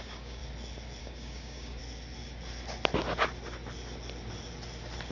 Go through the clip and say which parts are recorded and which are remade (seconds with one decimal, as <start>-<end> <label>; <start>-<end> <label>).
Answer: 0.0-0.4 remade; 0.4-1.0 recorded; 1.0-1.8 remade; 1.8-5.1 recorded